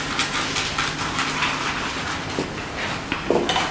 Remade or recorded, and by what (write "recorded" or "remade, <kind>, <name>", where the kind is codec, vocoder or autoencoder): recorded